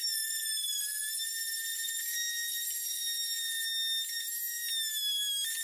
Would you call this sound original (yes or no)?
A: yes